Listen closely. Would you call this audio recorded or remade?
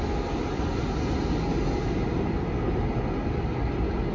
recorded